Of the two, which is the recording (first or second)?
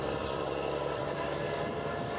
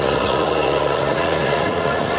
first